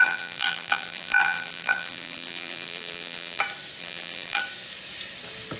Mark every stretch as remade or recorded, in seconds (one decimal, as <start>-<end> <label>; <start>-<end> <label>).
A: 0.0-3.4 remade; 3.4-3.8 recorded; 3.8-4.4 remade; 4.4-5.6 recorded